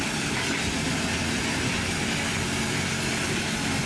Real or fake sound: real